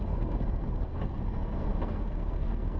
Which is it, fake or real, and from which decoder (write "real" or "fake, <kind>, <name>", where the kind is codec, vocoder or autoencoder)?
fake, codec, SNAC